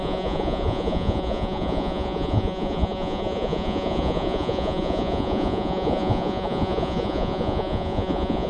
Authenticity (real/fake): fake